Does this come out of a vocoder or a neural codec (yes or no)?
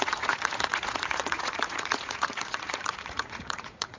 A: yes